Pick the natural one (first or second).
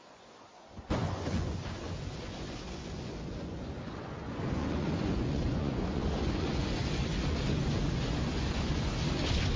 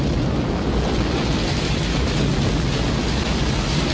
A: second